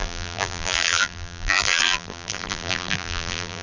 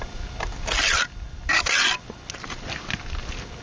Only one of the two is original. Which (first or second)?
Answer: second